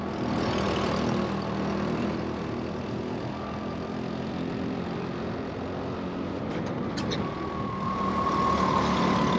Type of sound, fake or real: real